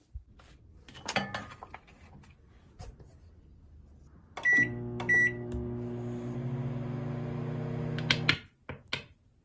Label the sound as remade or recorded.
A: recorded